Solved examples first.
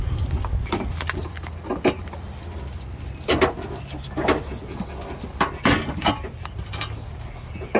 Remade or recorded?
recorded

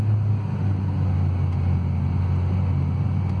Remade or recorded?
recorded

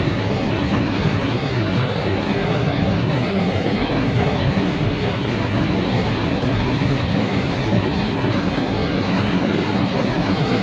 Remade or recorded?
remade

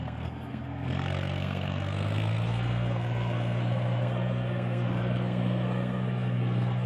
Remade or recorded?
remade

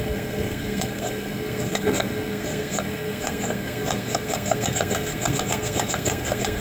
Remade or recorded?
remade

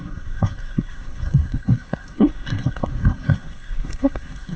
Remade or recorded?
remade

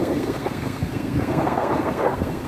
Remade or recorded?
remade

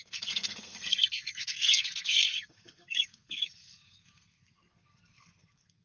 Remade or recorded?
remade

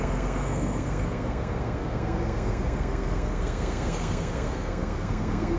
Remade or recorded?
remade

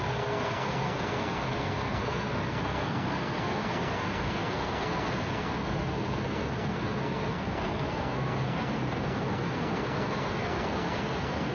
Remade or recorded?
remade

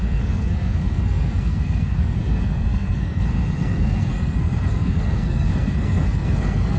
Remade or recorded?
remade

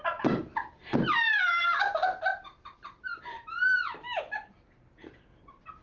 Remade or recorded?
recorded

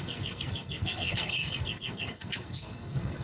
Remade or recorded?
remade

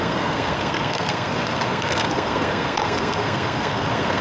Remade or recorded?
remade